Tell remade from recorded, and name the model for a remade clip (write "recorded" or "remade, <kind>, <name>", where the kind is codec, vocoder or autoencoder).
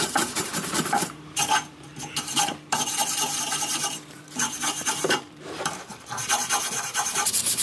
remade, vocoder, BigVGAN v2